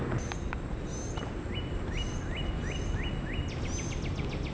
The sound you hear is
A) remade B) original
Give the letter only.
B